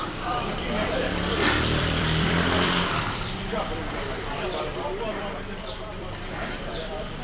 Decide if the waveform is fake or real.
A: fake